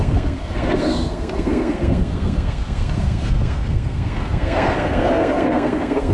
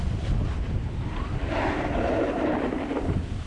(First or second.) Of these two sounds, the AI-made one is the first